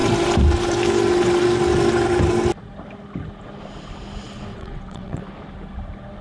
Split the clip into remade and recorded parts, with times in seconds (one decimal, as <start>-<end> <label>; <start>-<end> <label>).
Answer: 0.0-4.5 recorded; 4.5-5.2 remade; 5.2-6.2 recorded